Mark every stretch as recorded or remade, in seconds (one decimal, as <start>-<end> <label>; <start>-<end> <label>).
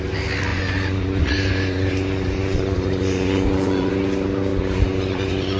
0.0-0.5 recorded; 0.5-3.9 remade; 3.9-4.5 recorded; 4.5-5.6 remade